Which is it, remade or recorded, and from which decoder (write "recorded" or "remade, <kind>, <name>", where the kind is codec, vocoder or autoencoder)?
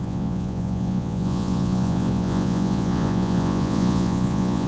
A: remade, vocoder, Vocos